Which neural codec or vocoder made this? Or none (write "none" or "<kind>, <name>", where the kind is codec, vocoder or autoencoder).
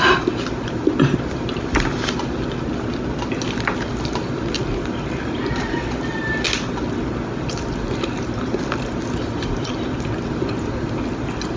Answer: none